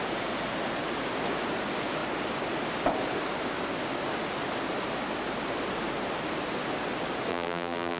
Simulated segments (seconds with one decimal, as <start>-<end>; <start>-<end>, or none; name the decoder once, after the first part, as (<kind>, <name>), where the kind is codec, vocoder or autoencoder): 7.3-8.0 (vocoder, BigVGAN v2)